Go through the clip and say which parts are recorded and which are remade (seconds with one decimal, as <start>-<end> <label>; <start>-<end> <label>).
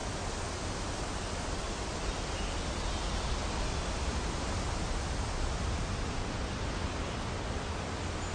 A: 0.0-8.3 recorded